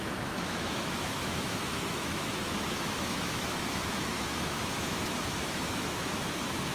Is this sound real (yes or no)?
no